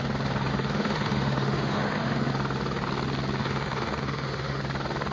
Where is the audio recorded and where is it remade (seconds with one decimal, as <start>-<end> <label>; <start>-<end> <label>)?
0.0-0.5 recorded; 0.5-2.3 remade; 2.3-3.4 recorded; 3.4-4.6 remade; 4.6-5.1 recorded